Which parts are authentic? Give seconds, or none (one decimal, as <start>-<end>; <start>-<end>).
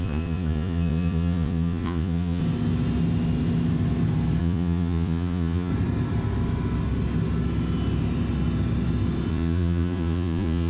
2.4-4.4; 5.7-9.3